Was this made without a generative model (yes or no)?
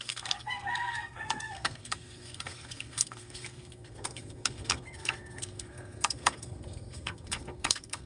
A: no